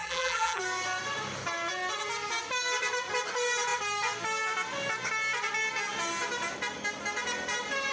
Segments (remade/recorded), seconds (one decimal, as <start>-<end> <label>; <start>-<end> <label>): 0.0-0.6 remade; 0.6-7.9 recorded